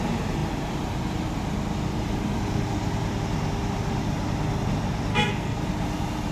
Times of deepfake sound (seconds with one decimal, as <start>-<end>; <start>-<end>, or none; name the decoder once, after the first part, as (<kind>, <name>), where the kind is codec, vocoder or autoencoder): 5.1-5.6 (codec, SNAC)